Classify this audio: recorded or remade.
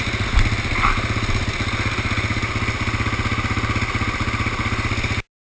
recorded